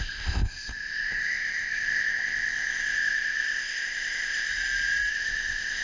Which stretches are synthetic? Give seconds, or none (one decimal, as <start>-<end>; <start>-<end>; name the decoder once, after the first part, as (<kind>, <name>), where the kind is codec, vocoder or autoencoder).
0.0-4.5 (codec, ZipCodec); 5.1-5.8